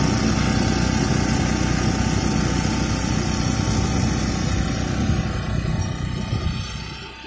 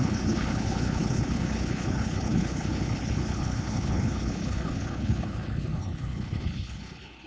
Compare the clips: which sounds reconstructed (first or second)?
second